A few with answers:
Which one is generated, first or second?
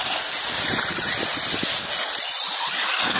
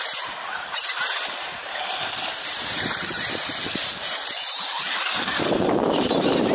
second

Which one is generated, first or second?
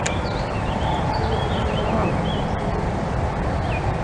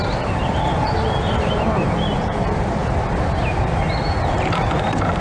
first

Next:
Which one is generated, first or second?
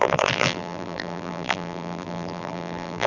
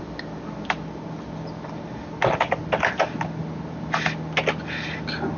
first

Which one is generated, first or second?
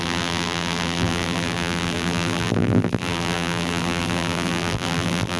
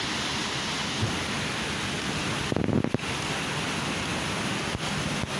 first